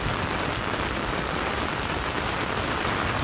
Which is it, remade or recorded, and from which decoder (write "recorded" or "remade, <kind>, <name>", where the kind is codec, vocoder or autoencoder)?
recorded